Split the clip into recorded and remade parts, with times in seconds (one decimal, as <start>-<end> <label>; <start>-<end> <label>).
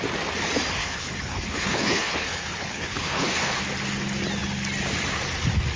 0.0-0.8 recorded; 0.8-3.6 remade; 3.6-5.8 recorded